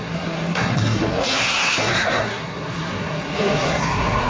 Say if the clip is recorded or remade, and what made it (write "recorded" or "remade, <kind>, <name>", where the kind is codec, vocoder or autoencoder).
remade, codec, SNAC